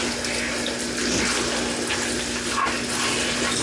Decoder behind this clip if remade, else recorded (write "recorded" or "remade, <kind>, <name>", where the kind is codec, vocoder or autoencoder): recorded